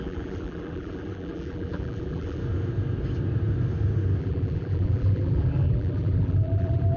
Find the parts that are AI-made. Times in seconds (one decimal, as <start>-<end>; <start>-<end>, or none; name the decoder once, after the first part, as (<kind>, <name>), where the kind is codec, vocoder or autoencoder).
0.0-2.4 (vocoder, BigVGAN v2); 4.2-7.0